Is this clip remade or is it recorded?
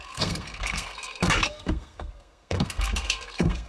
remade